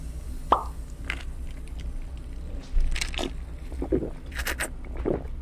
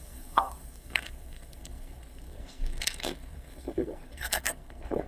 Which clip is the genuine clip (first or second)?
first